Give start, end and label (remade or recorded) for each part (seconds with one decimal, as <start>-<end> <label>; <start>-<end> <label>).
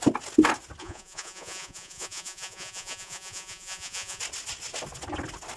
0.0-0.8 recorded; 0.8-4.2 remade; 4.2-5.6 recorded